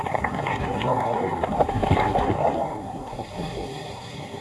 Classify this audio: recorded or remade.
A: remade